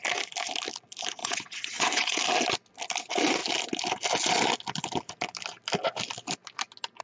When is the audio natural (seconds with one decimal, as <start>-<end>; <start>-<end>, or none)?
0.0-1.2; 2.2-7.0

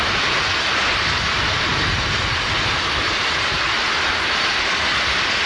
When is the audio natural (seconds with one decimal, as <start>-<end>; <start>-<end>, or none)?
0.0-5.5

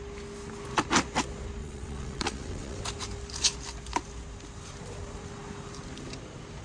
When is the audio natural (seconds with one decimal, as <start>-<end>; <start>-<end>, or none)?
0.0-1.6; 2.8-6.6

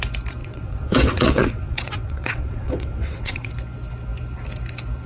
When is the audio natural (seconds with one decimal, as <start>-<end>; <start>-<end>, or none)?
0.0-0.4; 3.5-5.1